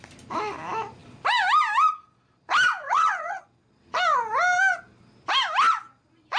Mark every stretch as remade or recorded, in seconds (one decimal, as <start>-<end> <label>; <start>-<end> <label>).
0.0-2.8 recorded; 2.8-3.4 remade; 3.4-6.4 recorded